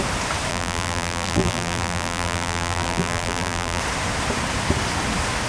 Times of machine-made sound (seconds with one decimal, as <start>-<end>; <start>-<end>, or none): 0.5-3.8